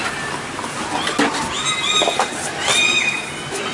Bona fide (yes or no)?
yes